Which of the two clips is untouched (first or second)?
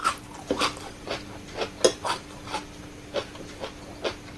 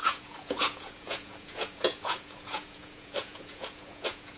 first